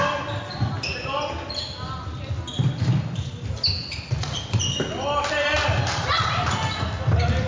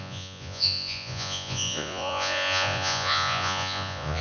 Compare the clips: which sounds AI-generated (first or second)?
second